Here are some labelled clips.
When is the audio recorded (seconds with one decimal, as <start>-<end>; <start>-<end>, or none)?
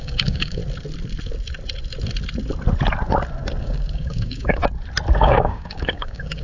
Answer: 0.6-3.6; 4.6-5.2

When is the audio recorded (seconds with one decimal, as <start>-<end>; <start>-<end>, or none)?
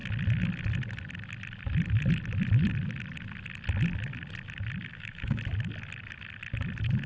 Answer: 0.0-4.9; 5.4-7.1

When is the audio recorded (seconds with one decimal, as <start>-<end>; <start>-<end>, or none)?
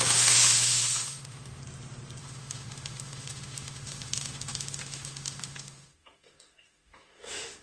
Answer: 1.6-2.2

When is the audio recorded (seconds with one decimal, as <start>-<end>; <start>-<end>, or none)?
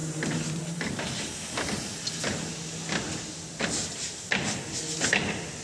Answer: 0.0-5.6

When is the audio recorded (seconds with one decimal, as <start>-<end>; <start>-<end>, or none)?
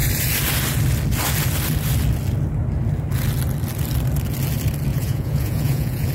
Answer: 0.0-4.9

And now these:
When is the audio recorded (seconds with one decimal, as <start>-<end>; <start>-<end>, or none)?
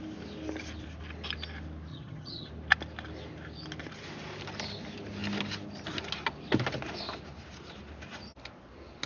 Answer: 0.0-1.9; 2.5-9.1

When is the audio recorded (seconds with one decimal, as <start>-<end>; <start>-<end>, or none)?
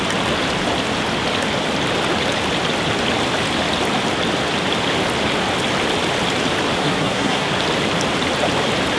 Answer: 0.0-6.8; 7.5-9.0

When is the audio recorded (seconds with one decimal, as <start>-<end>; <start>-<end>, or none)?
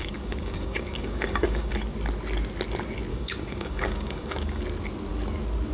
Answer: 1.7-3.1; 4.6-5.7